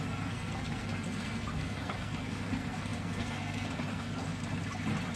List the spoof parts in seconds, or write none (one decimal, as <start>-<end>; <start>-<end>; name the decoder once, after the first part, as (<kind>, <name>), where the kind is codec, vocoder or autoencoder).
0.0-4.4 (codec, SNAC)